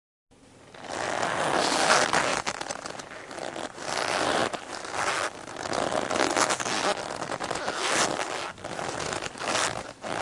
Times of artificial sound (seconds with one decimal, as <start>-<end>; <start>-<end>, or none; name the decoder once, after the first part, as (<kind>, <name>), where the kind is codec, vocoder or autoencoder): 2.3-3.7 (vocoder, BigVGAN v2); 4.4-5.0; 6.9-10.2